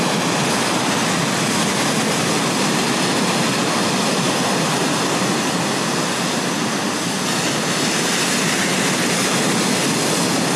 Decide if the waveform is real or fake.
real